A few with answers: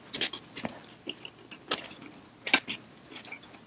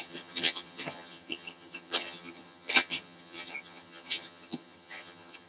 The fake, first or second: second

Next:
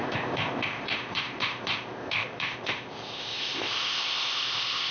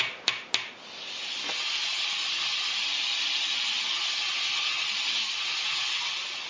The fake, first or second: first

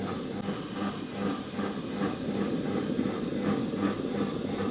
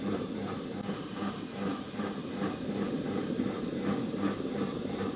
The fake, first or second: second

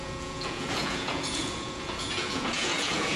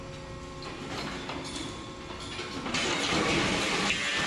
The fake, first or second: first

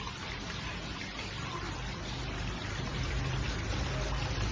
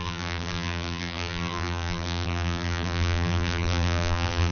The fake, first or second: second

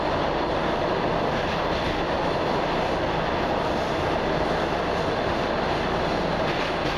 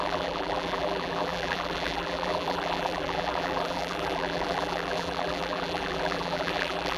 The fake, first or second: second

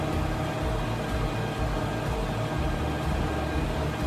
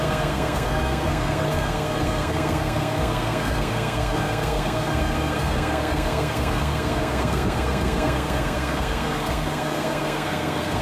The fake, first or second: second